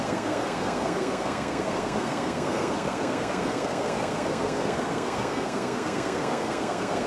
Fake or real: fake